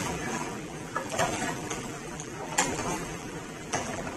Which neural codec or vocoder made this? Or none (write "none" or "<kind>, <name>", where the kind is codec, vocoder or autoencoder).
vocoder, BigVGAN v2